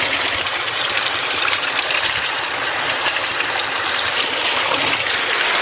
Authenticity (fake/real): fake